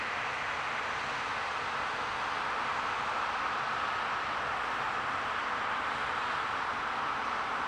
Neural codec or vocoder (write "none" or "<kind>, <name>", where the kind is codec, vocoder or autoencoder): none